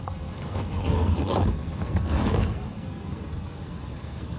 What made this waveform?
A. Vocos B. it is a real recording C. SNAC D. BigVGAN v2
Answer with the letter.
C